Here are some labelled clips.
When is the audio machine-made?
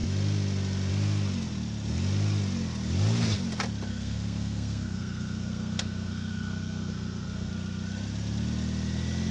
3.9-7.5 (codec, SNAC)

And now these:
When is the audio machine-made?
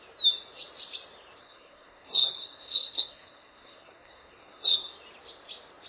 1.4-4.9 (codec, SNAC)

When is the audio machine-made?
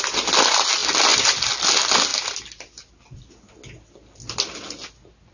none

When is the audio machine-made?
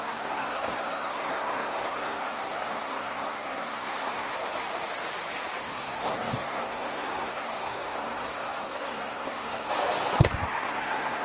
0.0-4.3 (codec, SNAC); 5.6-9.7; 10.2-11.2